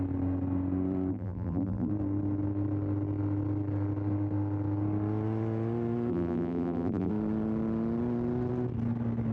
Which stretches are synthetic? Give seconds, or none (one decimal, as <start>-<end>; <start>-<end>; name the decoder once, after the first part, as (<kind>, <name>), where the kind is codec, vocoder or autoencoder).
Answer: 1.1-1.9 (vocoder, BigVGAN v2); 6.1-7.1

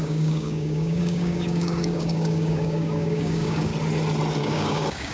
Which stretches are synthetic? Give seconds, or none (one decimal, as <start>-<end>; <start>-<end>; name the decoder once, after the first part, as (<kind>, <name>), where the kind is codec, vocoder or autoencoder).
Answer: 0.0-3.7 (codec, DAC); 4.4-5.1

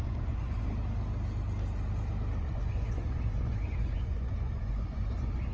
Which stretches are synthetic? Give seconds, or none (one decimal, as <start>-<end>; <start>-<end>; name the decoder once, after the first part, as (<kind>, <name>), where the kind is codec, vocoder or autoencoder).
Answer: 0.0-0.7 (vocoder, Vocos); 2.4-5.5

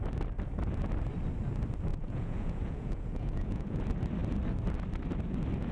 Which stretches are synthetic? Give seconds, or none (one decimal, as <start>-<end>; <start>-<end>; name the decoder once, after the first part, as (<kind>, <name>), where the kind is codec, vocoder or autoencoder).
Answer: 1.9-3.8 (vocoder, Vocos)

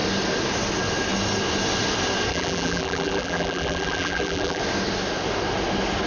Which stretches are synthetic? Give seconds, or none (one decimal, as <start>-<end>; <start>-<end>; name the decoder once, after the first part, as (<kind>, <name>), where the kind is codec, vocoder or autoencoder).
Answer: 2.3-4.6 (vocoder, BigVGAN v2)

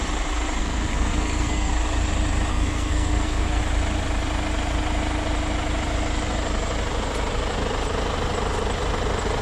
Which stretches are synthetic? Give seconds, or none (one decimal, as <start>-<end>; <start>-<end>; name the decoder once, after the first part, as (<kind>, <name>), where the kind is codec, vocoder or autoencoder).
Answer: 0.6-1.7 (codec, SNAC); 2.5-3.6